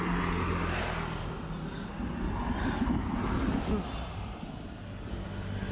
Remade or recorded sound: recorded